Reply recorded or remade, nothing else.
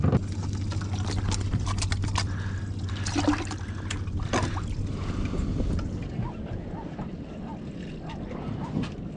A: recorded